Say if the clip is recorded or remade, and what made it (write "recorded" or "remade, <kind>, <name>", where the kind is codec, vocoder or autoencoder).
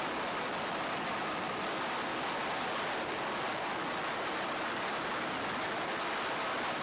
recorded